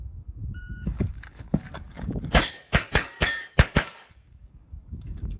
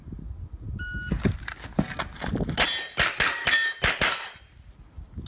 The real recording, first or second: second